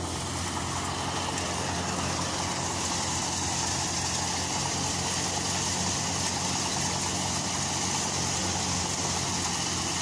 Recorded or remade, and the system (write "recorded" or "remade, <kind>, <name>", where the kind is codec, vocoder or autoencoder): recorded